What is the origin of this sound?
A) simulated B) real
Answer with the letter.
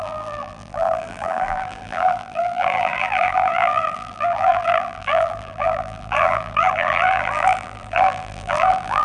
A